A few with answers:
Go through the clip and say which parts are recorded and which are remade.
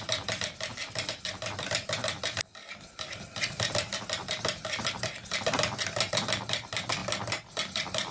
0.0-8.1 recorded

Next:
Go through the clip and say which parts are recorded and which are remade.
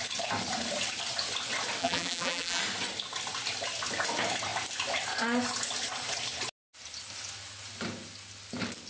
0.0-1.8 recorded; 1.8-2.6 remade; 2.6-8.9 recorded